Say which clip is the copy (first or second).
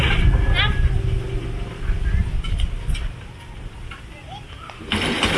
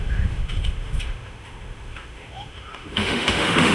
second